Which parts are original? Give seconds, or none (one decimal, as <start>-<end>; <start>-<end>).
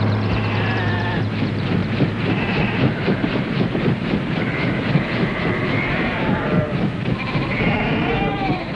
8.2-8.8